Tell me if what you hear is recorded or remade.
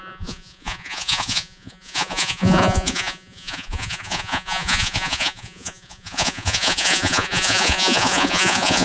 remade